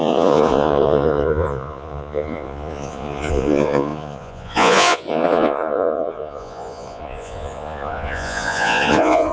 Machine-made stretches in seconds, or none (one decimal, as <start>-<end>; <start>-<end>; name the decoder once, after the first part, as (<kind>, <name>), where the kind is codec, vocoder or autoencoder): 0.0-9.3 (vocoder, Vocos)